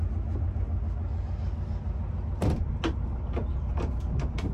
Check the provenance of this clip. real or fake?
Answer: real